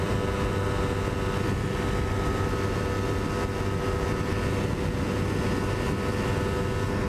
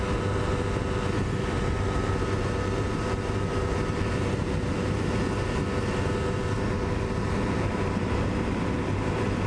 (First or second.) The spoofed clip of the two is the second